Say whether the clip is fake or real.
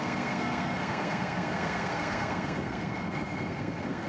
fake